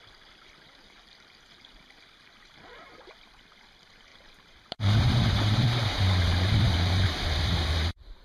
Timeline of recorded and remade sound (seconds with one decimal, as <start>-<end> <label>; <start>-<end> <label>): 0.0-4.1 recorded; 4.1-8.2 remade